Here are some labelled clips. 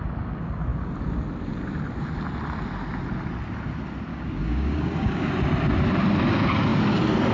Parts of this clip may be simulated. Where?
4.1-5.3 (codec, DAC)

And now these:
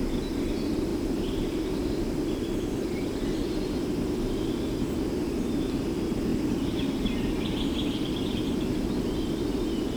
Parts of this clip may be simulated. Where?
6.3-7.2 (vocoder, BigVGAN v2)

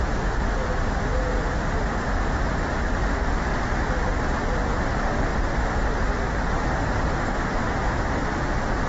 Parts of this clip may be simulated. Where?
5.3-6.4 (vocoder, BigVGAN v2)

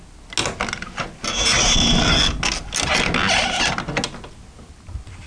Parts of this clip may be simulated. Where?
none

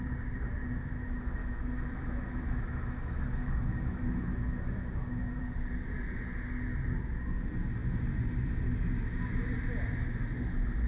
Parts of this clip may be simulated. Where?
1.4-5.4 (autoencoder, DAC-VAE)

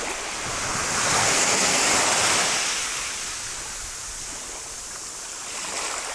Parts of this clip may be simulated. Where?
1.2-1.8 (codec, SNAC)

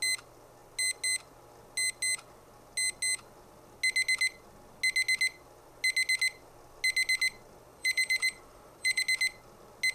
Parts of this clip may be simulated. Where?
7.7-9.0 (vocoder, BigVGAN v2)

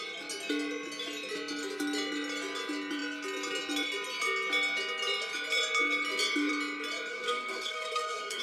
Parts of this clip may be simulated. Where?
7.1-8.4 (codec, SNAC)